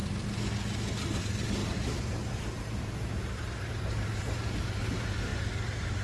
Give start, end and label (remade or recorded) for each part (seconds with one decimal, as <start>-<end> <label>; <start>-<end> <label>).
0.0-1.2 recorded; 1.2-6.0 remade